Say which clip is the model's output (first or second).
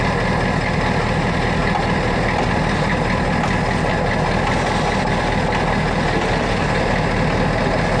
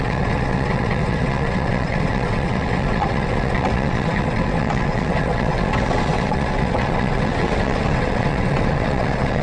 second